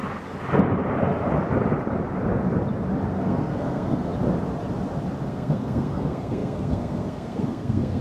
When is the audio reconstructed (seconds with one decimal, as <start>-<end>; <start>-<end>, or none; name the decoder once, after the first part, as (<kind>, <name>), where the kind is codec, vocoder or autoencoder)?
3.1-4.1 (codec, SNAC); 5.3-8.0